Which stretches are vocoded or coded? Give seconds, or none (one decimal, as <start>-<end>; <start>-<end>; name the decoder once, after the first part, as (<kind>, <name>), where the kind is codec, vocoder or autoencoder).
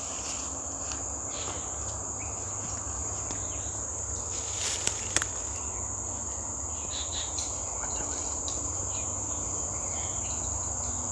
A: 6.9-8.8 (vocoder, BigVGAN v2)